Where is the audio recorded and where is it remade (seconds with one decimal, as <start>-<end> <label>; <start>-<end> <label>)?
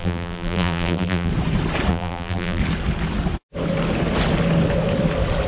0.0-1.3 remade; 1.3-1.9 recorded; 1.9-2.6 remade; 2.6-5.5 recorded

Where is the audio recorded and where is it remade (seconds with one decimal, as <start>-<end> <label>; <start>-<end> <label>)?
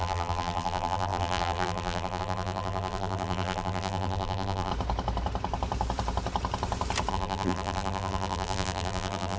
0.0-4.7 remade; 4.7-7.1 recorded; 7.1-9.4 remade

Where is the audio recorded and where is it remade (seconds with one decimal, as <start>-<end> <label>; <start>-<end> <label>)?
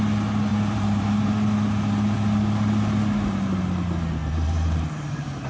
0.0-0.5 recorded; 0.5-1.3 remade; 1.3-4.2 recorded; 4.2-5.5 remade